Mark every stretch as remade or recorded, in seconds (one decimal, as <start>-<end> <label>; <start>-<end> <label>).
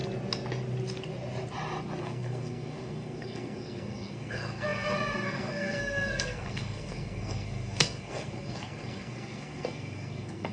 0.0-2.0 recorded; 2.0-10.5 remade